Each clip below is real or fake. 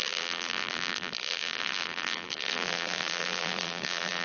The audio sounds fake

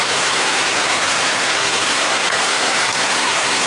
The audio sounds fake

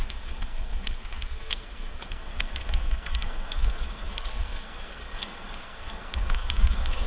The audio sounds fake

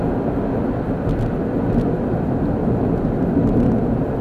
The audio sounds real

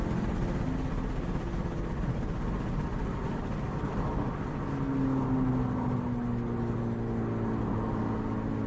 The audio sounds real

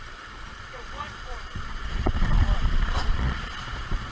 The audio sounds fake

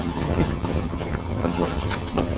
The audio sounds fake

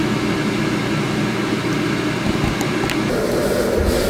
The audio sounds real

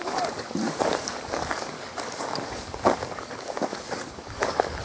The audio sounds fake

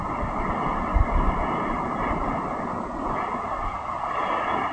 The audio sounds real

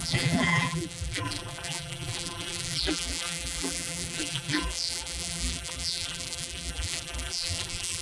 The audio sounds fake